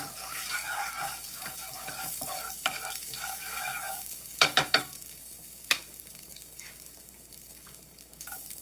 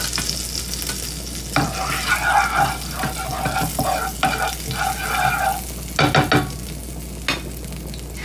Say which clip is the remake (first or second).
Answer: first